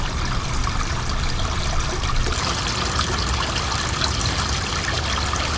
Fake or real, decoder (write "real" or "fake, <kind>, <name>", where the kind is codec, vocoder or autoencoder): real